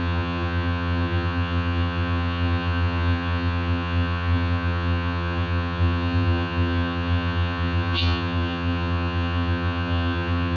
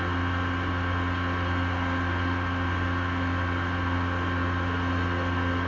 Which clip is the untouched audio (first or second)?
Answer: second